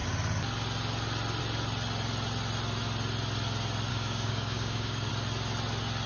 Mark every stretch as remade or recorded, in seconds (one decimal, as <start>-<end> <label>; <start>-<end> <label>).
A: 0.0-3.9 recorded; 3.9-5.1 remade; 5.1-6.1 recorded